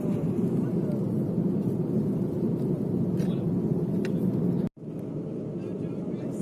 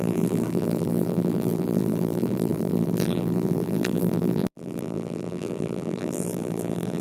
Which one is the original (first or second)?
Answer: first